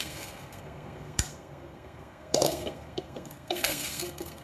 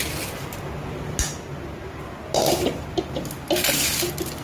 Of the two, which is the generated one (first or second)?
first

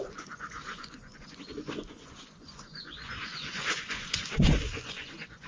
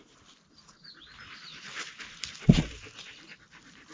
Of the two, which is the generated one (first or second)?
first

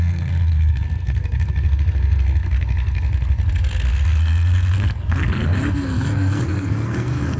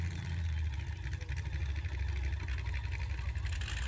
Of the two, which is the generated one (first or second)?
first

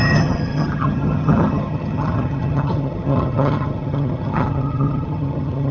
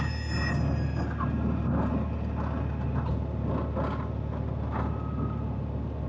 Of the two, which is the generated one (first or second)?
first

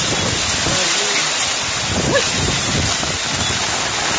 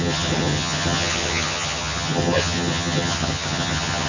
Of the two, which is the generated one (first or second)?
second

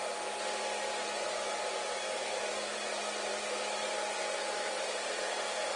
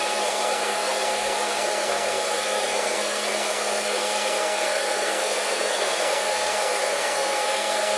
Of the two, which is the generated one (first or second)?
second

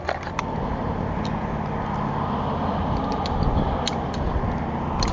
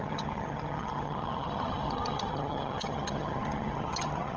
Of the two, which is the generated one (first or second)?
second